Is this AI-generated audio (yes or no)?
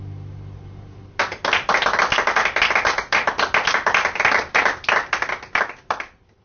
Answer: no